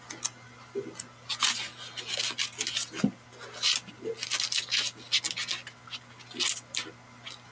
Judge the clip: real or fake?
real